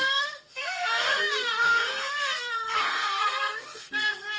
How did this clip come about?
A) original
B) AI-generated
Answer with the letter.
B